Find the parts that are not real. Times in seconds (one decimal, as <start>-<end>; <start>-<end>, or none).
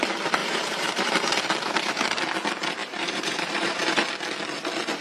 0.4-1.3; 2.8-4.1